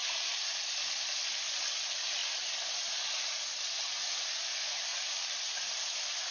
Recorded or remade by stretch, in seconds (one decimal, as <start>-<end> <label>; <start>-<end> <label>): 0.0-0.6 remade; 0.6-2.2 recorded; 2.2-2.9 remade; 2.9-4.9 recorded; 4.9-6.3 remade

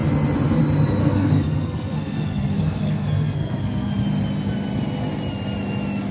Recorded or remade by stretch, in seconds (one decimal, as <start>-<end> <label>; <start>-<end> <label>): 0.0-1.0 recorded; 1.0-3.9 remade; 3.9-6.1 recorded

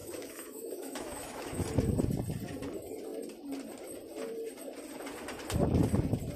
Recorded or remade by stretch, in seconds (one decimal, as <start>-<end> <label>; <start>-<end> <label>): 0.0-1.6 remade; 1.6-6.4 recorded

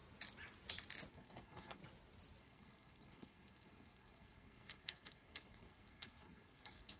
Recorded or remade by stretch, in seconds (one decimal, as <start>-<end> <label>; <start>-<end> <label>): 0.0-1.1 recorded; 1.1-1.8 remade; 1.8-2.4 recorded; 2.4-7.0 remade

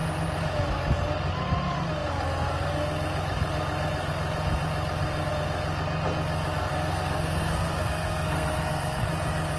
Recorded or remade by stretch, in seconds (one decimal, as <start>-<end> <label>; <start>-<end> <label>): 0.0-6.7 recorded; 6.7-9.1 remade; 9.1-9.6 recorded

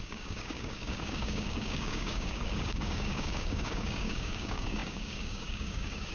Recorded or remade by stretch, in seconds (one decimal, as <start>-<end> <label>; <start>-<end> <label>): 0.0-6.1 remade

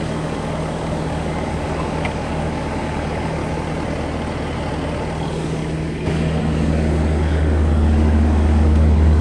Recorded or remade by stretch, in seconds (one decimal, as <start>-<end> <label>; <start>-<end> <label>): 0.0-3.4 remade; 3.4-5.3 recorded; 5.3-9.2 remade